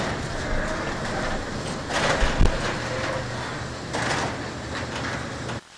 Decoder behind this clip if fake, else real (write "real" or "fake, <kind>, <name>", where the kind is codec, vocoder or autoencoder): real